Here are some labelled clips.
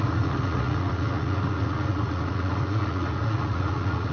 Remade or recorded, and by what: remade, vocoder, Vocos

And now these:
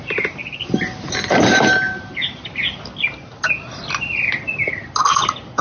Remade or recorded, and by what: recorded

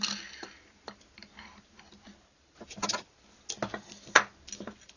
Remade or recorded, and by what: recorded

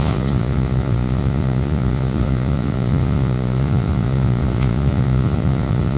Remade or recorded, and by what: remade, vocoder, Vocos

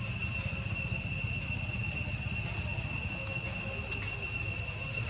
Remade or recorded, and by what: recorded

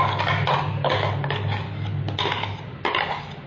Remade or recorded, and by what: recorded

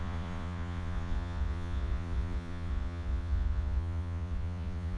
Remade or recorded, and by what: remade, vocoder, Vocos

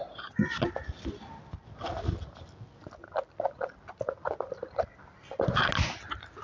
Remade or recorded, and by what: recorded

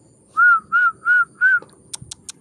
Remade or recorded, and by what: recorded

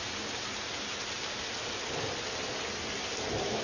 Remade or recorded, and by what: recorded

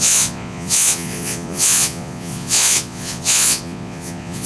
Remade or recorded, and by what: remade, vocoder, Vocos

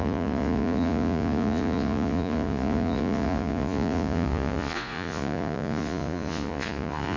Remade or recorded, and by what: remade, vocoder, Vocos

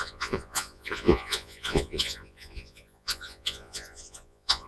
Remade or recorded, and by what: remade, vocoder, Vocos